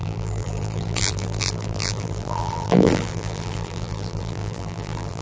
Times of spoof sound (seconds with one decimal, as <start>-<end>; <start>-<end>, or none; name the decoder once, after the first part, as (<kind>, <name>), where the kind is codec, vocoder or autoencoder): 0.0-5.2 (vocoder, BigVGAN v2)